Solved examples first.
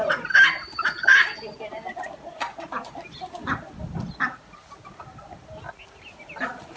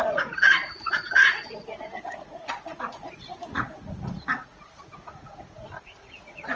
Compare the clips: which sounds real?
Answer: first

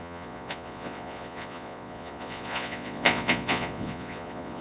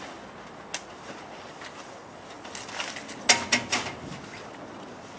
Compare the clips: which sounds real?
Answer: second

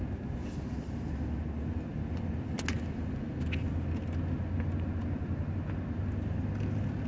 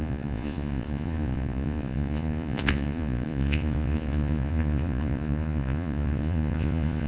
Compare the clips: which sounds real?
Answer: first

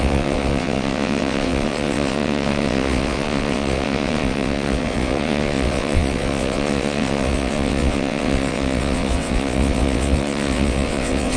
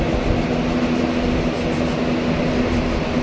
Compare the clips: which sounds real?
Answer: second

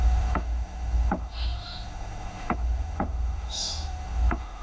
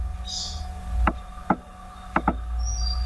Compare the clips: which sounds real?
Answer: second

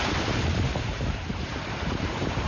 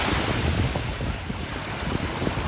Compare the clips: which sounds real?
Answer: second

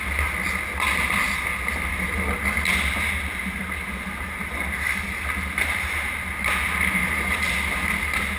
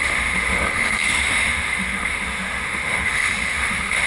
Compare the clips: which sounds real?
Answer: first